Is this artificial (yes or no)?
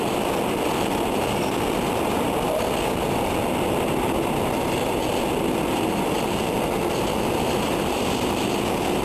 no